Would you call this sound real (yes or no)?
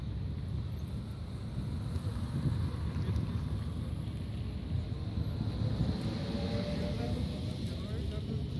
yes